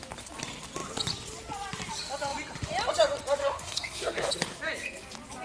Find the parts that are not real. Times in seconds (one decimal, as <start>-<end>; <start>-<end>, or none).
3.4-4.3